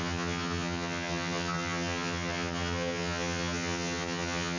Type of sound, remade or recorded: remade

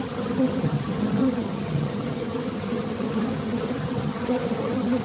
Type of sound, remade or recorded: remade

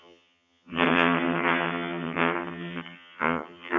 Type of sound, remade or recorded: remade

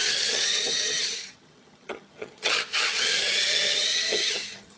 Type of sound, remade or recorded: remade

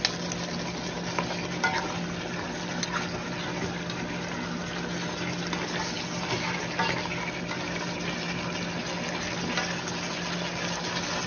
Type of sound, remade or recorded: recorded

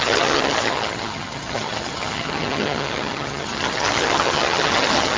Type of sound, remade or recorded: remade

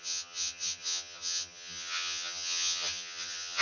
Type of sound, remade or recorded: remade